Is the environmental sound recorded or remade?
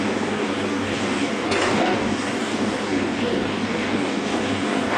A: remade